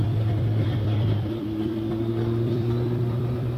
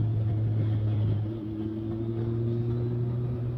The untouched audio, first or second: second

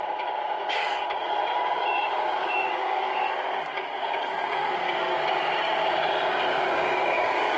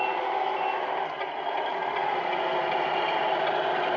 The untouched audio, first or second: second